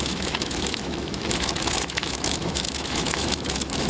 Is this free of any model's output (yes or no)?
no